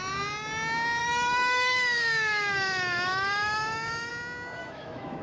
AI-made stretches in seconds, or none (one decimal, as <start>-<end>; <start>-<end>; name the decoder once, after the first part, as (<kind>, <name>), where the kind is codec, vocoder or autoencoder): 1.0-4.1 (autoencoder, DAC-VAE); 4.6-5.2